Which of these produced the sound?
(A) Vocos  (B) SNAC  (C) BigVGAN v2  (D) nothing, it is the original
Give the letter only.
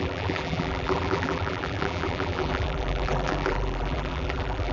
C